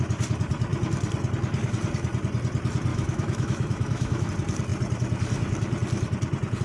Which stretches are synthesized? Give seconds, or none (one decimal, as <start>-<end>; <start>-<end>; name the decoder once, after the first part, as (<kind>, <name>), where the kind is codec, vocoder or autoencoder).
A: 2.9-4.3 (autoencoder, DAC-VAE)